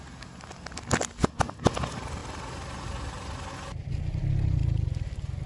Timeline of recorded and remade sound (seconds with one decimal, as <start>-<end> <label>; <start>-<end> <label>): 0.0-5.5 recorded